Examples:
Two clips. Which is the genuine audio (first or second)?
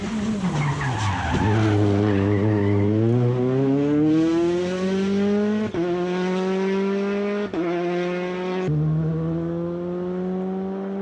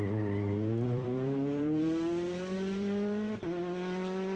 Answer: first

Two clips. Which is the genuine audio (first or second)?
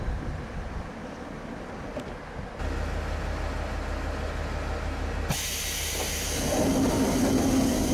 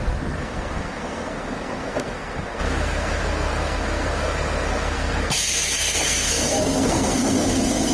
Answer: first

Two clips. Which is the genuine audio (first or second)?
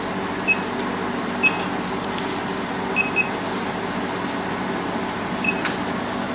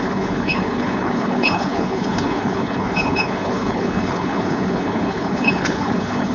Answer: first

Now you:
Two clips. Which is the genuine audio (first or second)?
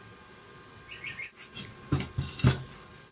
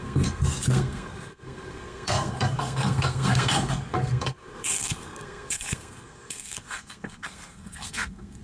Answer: first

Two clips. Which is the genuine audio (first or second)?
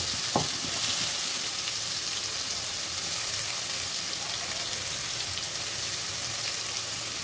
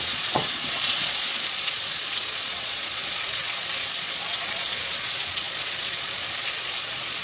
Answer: first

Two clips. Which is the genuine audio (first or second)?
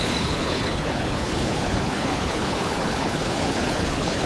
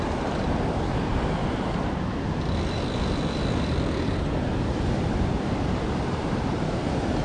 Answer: second